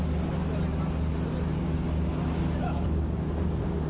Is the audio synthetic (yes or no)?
no